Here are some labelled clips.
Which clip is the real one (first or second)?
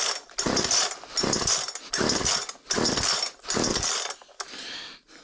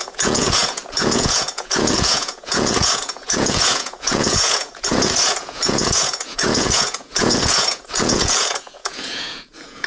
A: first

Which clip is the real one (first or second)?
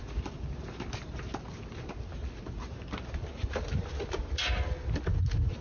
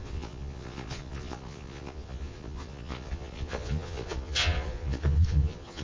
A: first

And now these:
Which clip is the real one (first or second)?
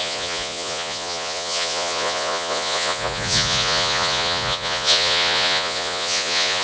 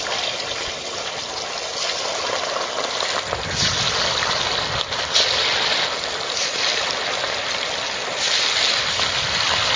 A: second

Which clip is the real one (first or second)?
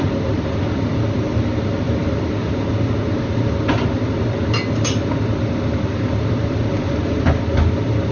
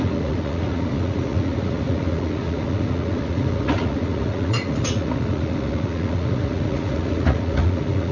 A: first